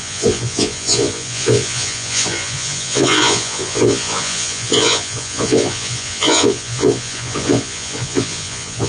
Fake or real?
fake